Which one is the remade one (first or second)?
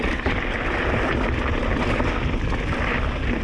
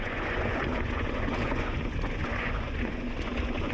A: second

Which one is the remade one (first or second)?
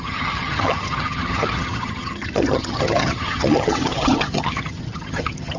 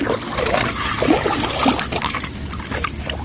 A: first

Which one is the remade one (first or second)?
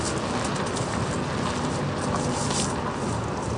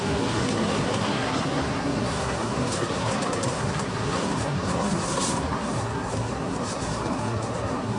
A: second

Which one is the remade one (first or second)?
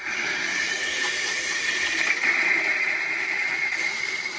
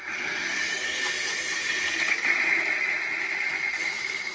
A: first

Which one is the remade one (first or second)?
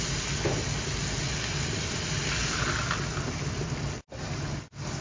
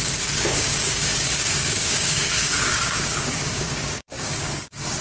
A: second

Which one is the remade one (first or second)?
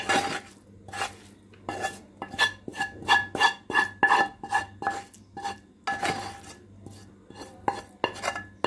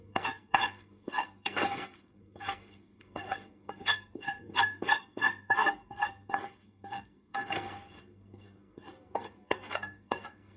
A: second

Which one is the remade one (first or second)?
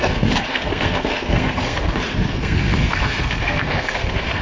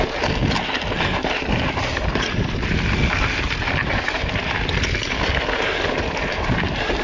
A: first